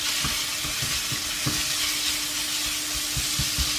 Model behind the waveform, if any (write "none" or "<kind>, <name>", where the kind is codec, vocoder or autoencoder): none